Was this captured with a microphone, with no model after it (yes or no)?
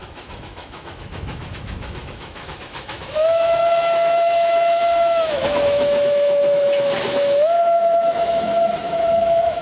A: no